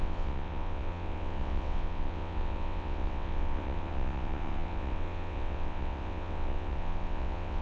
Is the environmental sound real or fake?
fake